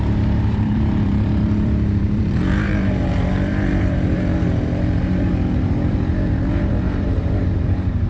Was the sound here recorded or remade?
remade